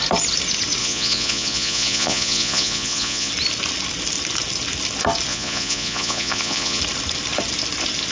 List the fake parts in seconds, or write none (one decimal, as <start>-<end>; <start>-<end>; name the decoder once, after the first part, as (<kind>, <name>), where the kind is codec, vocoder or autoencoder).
0.8-3.3 (vocoder, Vocos); 5.3-6.8